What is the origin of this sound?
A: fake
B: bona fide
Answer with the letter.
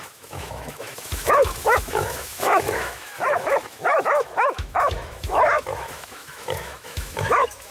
A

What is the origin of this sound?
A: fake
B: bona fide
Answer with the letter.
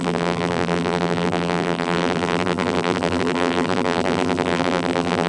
A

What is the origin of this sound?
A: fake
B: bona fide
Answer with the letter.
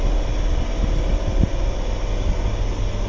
B